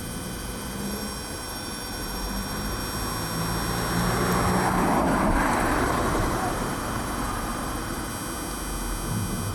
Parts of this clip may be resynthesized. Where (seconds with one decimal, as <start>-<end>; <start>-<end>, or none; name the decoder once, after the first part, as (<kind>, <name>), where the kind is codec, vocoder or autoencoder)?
0.0-2.8 (vocoder, BigVGAN v2); 4.8-8.1